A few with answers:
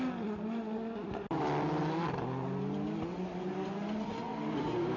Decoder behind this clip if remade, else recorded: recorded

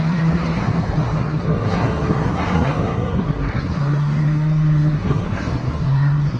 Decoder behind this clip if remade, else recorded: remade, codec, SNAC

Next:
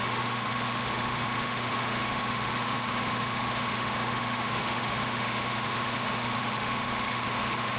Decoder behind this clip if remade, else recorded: remade, autoencoder, DAC-VAE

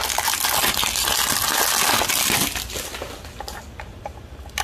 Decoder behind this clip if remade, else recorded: recorded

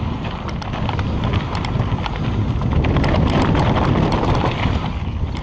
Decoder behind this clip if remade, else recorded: recorded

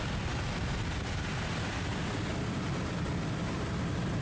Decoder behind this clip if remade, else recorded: recorded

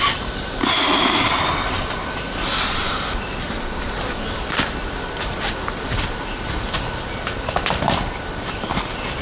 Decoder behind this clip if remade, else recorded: recorded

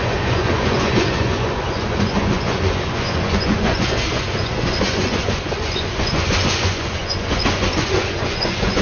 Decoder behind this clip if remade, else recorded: remade, vocoder, Vocos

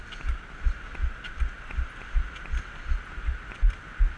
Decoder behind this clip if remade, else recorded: recorded